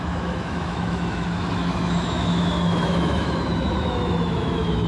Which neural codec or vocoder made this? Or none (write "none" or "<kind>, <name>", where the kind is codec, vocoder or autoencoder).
autoencoder, DAC-VAE